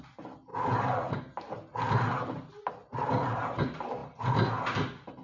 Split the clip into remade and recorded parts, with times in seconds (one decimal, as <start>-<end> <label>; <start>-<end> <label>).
0.0-5.2 recorded